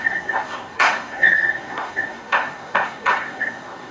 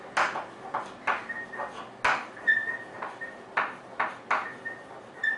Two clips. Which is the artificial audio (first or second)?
first